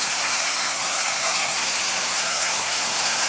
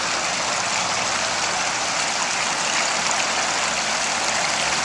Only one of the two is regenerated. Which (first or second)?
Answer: first